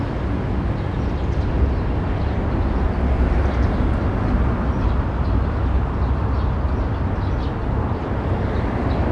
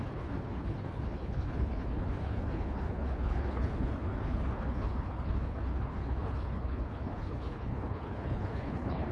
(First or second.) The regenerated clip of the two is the second